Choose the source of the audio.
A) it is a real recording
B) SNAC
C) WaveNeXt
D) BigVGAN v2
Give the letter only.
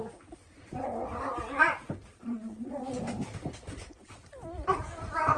D